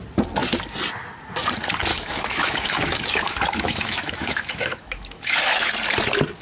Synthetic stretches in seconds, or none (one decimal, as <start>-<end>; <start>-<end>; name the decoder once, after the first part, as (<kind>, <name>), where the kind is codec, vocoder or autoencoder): 1.9-5.7 (autoencoder, DAC-VAE)